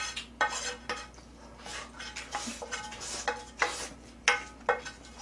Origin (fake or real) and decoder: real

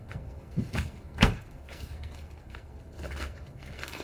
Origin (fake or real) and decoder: fake, codec, SNAC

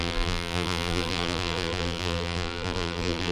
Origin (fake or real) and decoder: fake, vocoder, BigVGAN v2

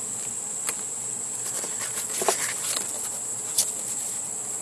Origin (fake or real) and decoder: real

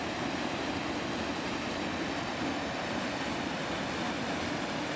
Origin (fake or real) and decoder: real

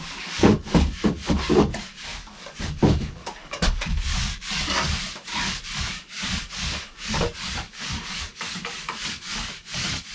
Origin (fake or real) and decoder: fake, codec, DAC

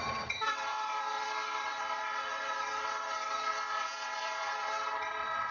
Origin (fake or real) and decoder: fake, vocoder, WaveNeXt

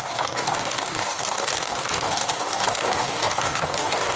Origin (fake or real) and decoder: fake, codec, DAC